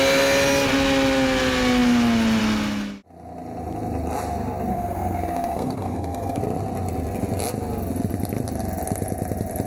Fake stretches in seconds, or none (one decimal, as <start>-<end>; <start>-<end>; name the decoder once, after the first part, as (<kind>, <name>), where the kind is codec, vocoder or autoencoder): 4.7-6.4 (codec, SNAC)